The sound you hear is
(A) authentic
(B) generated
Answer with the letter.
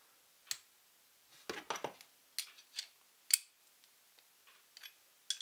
A